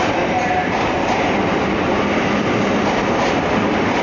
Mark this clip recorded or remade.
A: recorded